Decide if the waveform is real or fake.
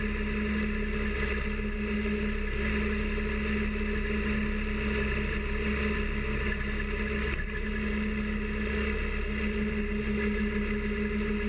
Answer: real